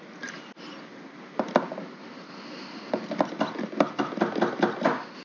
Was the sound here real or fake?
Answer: real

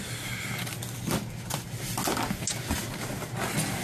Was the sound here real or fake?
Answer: real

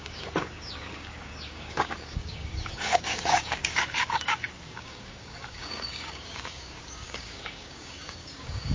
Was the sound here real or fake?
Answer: fake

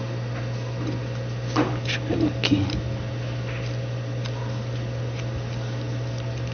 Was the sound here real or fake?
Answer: real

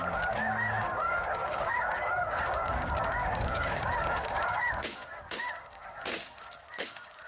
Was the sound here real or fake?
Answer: fake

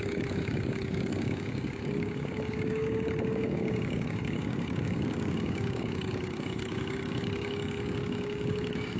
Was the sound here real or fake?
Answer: fake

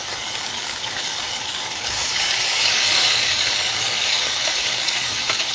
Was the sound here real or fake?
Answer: fake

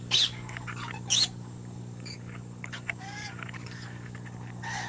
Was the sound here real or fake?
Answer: fake